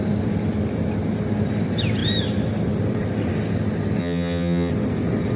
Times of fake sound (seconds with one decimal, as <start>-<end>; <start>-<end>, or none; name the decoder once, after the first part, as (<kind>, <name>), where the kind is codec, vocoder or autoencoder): 4.0-4.7 (vocoder, HiFi-GAN)